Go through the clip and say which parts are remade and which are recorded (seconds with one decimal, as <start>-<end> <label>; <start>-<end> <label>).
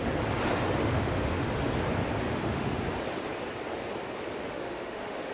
0.0-0.8 recorded; 0.8-1.5 remade; 1.5-2.2 recorded; 2.2-2.8 remade; 2.8-4.5 recorded; 4.5-5.3 remade